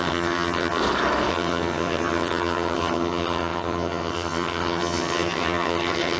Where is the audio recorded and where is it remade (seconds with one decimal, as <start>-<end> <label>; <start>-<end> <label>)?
0.0-0.8 remade; 0.8-1.3 recorded; 1.3-6.2 remade